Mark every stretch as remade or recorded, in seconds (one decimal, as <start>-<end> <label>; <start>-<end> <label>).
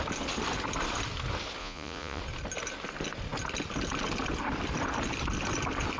0.0-1.6 recorded; 1.6-2.2 remade; 2.2-6.0 recorded